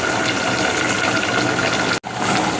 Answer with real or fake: real